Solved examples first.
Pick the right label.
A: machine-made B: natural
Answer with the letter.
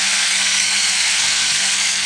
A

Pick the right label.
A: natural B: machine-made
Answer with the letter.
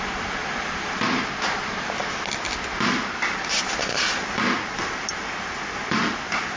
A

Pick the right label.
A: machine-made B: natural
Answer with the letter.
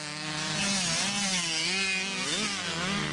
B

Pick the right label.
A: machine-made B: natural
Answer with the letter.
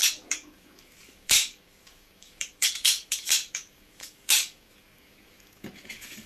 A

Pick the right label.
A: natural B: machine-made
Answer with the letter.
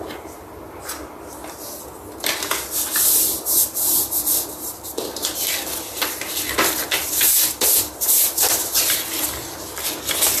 A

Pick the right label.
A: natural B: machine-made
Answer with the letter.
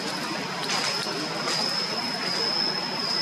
A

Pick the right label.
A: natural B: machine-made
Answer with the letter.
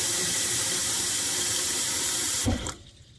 B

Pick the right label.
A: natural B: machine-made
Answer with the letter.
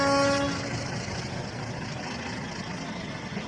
A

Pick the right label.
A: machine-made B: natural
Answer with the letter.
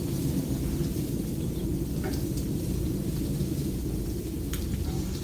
A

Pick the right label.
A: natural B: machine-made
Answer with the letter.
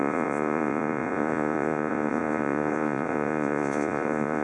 B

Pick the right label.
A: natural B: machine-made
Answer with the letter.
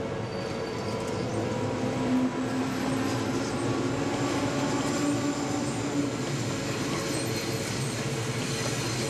A